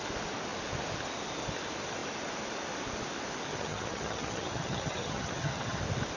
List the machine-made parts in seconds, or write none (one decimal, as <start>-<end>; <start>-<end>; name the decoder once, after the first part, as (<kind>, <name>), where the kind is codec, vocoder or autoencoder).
3.5-5.8 (vocoder, HiFi-GAN)